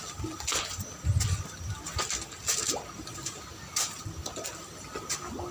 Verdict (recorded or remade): recorded